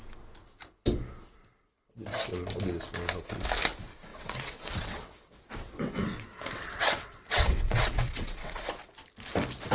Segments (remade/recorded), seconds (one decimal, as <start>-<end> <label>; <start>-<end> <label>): 0.0-4.1 recorded; 4.1-8.6 remade; 8.6-9.7 recorded